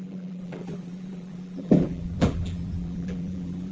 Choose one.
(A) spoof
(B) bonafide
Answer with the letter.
A